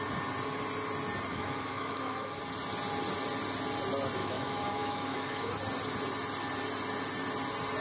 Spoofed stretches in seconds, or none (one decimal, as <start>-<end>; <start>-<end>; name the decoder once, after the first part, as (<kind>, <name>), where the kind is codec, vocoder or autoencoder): 1.3-2.4 (autoencoder, DAC-VAE); 4.2-5.5